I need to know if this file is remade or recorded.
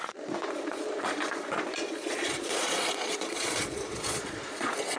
remade